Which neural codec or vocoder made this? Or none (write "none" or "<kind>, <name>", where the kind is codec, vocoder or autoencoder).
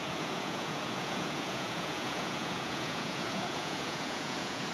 vocoder, Vocos